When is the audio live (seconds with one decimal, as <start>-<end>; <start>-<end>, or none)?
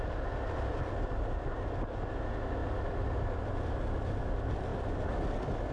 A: 0.0-2.6; 4.3-5.7